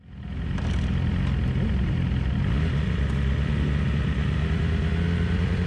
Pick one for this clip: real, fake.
real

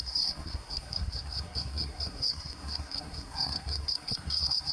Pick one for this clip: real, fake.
fake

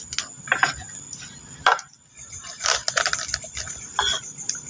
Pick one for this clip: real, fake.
real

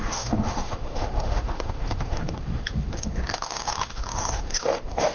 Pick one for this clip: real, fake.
fake